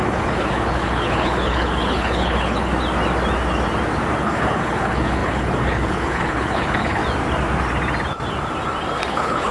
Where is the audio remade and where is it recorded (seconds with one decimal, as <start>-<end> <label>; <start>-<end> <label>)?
0.0-2.7 remade; 2.7-4.2 recorded; 4.2-7.0 remade; 7.0-9.1 recorded; 9.1-9.5 remade